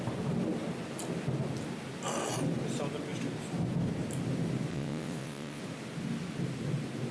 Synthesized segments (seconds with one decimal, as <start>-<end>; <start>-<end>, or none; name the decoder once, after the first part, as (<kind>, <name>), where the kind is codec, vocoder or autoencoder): 4.7-5.6 (vocoder, WaveNeXt)